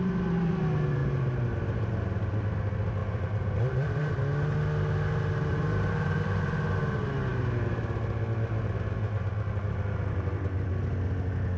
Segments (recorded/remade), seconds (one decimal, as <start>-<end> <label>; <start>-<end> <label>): 0.0-3.0 recorded; 3.0-4.1 remade; 4.1-5.5 recorded; 5.5-6.5 remade; 6.5-7.3 recorded; 7.3-7.8 remade; 7.8-11.6 recorded